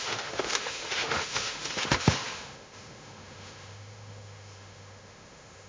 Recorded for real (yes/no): no